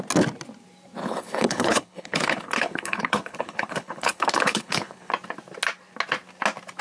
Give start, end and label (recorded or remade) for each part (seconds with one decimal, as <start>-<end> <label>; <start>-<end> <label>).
0.0-1.0 recorded; 1.0-5.1 remade; 5.1-6.8 recorded

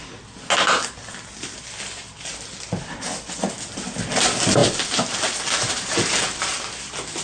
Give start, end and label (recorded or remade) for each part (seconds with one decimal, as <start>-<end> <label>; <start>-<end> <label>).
0.0-7.2 recorded

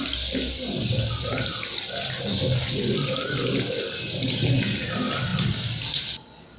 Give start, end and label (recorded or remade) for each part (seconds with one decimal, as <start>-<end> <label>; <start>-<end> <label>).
0.0-6.6 recorded